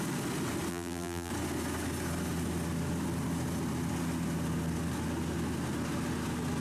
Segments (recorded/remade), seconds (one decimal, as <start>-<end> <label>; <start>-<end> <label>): 0.0-0.7 recorded; 0.7-1.3 remade; 1.3-6.6 recorded